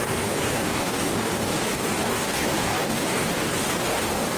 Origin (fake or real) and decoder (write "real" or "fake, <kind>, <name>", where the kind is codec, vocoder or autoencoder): fake, codec, DAC